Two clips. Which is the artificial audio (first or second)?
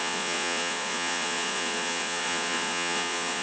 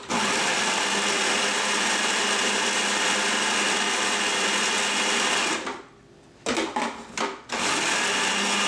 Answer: first